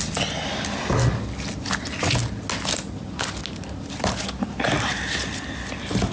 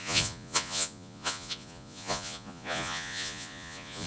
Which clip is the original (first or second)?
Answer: first